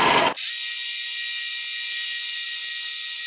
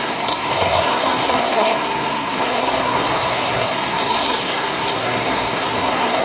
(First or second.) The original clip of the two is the first